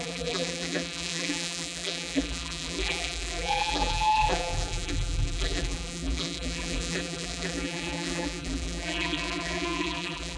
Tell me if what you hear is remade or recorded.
remade